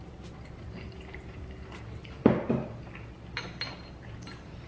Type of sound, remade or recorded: recorded